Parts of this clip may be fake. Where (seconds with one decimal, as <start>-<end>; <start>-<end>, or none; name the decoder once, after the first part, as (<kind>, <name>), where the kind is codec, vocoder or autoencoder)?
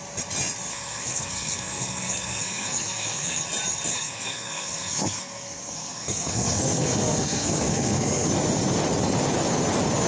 0.7-3.4 (codec, SNAC); 3.9-8.3